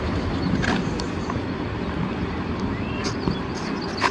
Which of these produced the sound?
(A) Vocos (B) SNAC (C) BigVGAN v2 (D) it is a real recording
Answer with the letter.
D